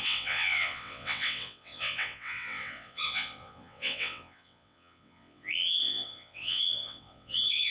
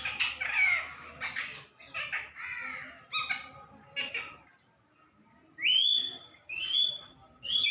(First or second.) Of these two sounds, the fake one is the first